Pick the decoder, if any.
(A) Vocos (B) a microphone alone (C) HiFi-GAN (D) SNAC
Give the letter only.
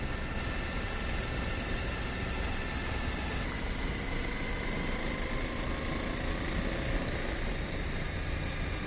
B